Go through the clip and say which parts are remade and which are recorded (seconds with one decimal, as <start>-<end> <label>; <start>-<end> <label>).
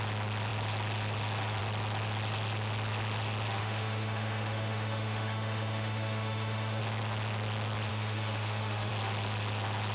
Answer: 0.0-3.6 recorded; 3.6-6.8 remade; 6.8-7.9 recorded; 7.9-8.9 remade; 8.9-9.9 recorded